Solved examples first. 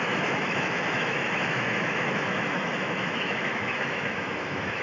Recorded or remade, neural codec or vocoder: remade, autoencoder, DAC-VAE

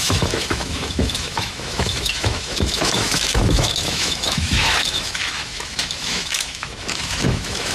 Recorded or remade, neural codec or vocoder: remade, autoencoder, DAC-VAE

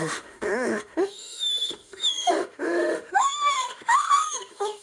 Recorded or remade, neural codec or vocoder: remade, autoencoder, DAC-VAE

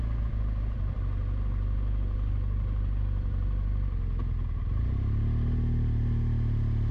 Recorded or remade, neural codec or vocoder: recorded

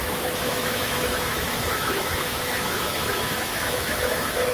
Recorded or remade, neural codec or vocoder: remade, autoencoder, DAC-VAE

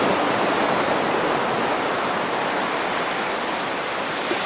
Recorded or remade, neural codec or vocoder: recorded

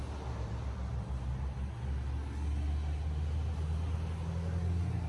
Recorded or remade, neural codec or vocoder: recorded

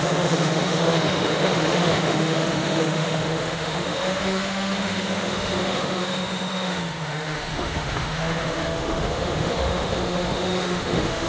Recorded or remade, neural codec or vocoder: remade, autoencoder, DAC-VAE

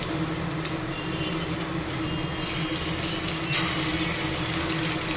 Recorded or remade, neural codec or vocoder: recorded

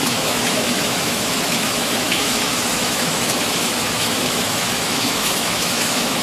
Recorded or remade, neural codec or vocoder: remade, autoencoder, DAC-VAE